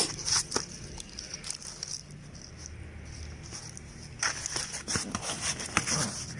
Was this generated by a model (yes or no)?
no